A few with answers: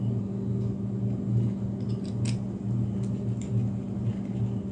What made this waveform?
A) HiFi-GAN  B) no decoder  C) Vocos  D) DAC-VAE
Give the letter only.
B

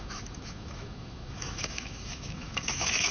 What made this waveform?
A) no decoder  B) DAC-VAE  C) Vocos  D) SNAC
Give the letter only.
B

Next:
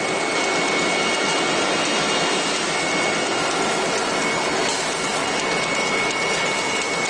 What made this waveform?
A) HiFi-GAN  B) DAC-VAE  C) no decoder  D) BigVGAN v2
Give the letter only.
C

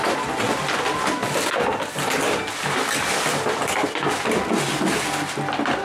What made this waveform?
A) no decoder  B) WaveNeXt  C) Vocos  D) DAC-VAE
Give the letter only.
A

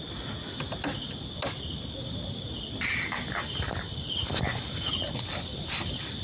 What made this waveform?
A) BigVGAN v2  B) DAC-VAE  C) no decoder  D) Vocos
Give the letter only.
C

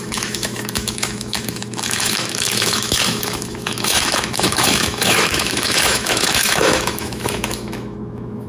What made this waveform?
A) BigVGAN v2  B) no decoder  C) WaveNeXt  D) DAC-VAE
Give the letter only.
D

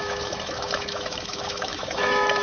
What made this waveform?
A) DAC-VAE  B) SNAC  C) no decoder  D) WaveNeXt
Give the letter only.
A